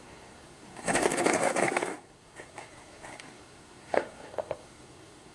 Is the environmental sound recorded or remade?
remade